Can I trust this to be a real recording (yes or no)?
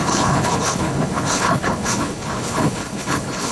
no